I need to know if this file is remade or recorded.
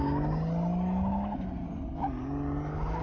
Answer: recorded